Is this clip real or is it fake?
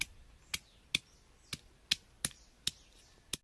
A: real